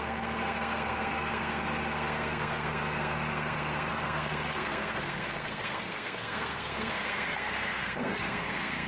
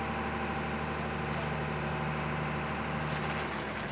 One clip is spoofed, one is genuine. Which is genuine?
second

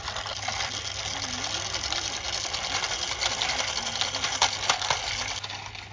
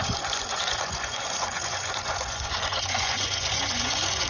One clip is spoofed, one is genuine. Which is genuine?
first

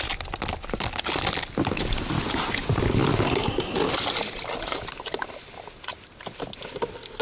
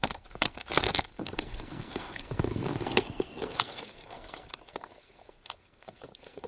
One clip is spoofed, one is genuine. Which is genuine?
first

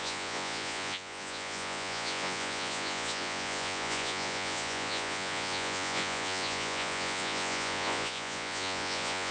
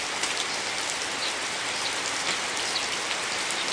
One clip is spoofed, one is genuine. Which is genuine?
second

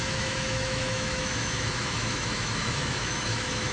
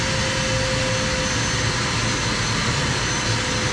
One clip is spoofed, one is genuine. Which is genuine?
second